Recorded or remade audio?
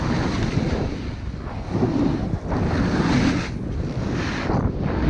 recorded